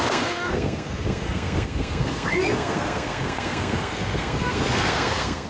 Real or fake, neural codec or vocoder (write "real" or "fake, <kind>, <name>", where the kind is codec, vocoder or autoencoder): fake, codec, SNAC